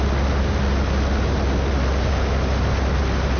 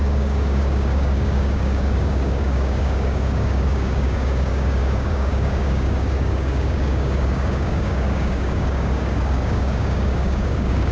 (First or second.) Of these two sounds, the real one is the first